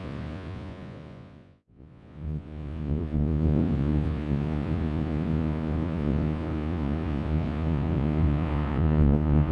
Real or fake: fake